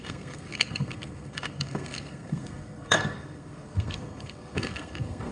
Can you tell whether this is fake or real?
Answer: fake